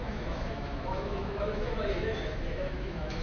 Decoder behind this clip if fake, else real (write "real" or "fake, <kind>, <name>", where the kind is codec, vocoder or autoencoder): fake, autoencoder, DAC-VAE